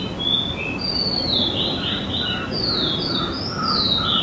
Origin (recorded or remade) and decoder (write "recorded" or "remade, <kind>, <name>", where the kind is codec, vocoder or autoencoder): recorded